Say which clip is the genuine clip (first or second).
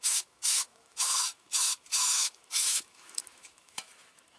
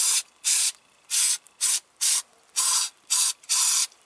second